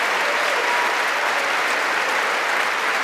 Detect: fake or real real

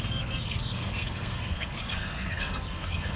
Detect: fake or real fake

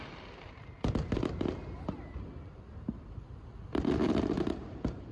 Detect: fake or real fake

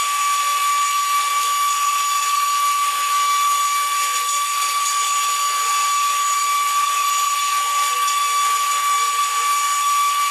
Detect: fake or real fake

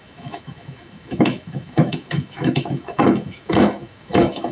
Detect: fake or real fake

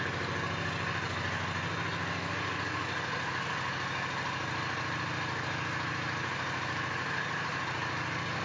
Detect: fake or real real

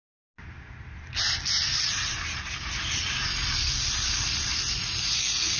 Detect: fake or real real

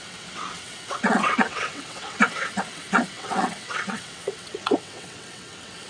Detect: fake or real fake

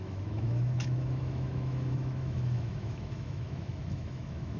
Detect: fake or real fake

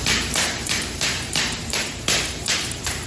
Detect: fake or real fake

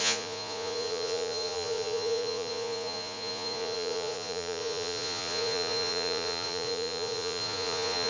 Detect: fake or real fake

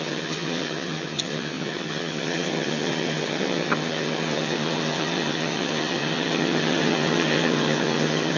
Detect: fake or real fake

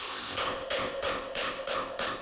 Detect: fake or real fake